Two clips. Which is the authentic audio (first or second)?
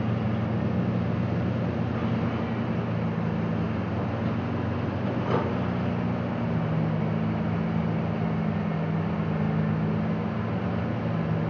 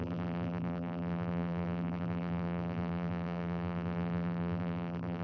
first